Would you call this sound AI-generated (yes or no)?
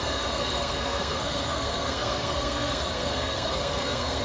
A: yes